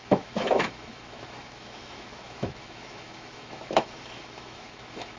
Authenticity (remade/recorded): remade